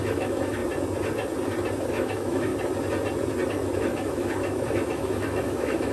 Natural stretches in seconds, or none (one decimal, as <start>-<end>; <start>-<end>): 0.6-1.9; 2.5-3.5